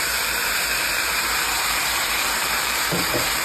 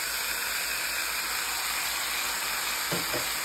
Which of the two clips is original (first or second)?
second